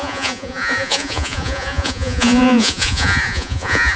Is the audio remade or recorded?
remade